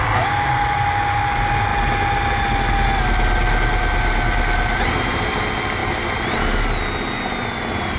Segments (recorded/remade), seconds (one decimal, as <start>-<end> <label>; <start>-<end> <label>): 0.0-8.0 recorded